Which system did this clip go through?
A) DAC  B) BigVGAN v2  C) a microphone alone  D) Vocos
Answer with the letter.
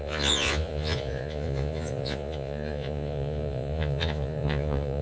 D